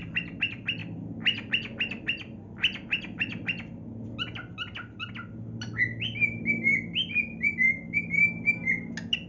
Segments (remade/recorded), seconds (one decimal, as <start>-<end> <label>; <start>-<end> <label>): 0.0-9.3 recorded